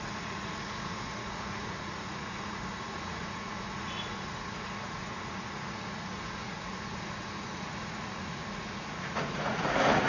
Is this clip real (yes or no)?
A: no